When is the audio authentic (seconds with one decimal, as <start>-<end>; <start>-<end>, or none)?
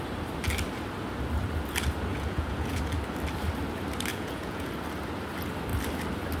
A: 0.0-2.1; 2.8-4.1; 4.7-6.4